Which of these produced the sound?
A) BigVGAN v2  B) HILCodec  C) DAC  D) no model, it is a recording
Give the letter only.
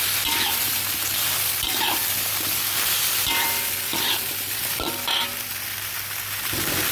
A